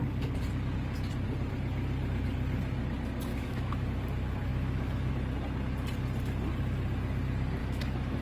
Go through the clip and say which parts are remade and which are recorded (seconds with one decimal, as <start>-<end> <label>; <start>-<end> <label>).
0.0-3.3 recorded; 3.3-3.9 remade; 3.9-4.5 recorded; 4.5-5.1 remade; 5.1-7.6 recorded; 7.6-8.2 remade